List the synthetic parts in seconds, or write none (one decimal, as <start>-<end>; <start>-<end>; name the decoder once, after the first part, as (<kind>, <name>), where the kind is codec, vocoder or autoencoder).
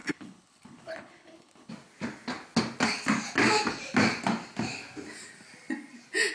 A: 0.0-1.7 (codec, HILCodec)